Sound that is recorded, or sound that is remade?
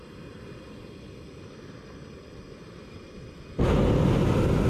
recorded